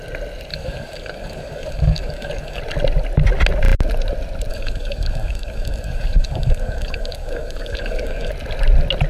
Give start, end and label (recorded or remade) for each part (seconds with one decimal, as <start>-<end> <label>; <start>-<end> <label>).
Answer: 0.0-0.5 recorded; 0.5-2.6 remade; 2.6-4.5 recorded; 4.5-8.3 remade; 8.3-9.1 recorded